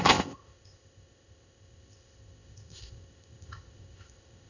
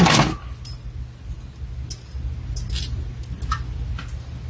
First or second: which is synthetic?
first